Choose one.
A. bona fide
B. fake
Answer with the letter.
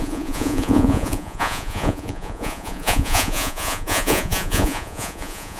B